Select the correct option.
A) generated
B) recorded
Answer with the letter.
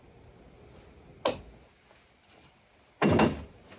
B